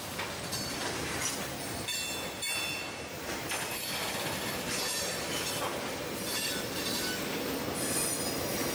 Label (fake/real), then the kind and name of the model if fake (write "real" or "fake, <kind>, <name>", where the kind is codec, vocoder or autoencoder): real